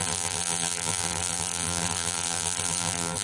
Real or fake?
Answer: fake